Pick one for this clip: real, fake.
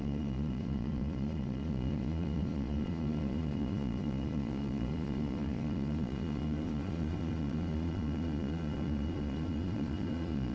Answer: fake